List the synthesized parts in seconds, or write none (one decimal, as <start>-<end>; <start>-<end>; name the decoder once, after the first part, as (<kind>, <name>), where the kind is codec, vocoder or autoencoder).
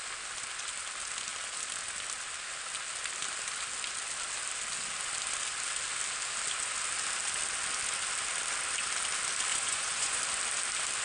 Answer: 9.5-10.2 (vocoder, Vocos)